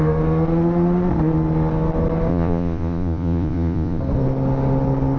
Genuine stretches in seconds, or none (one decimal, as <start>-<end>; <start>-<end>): 0.0-2.3; 4.0-5.2